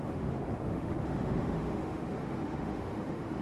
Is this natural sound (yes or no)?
no